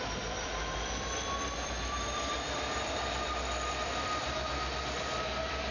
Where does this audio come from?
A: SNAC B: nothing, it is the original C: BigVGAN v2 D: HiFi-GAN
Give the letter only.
C